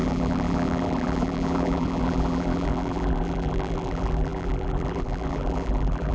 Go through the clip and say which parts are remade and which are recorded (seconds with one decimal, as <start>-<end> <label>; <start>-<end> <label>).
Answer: 0.0-6.1 remade